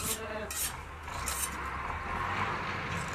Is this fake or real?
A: real